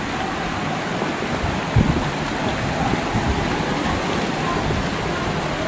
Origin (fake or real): real